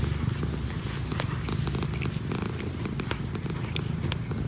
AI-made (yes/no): no